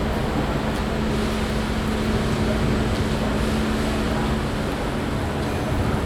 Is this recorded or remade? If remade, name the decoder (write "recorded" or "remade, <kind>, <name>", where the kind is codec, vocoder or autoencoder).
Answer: recorded